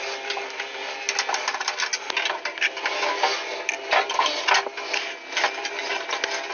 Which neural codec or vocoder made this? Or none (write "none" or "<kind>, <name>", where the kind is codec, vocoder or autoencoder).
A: none